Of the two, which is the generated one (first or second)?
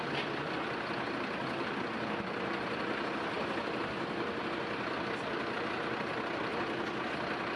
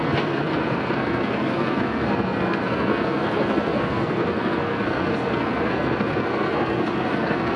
second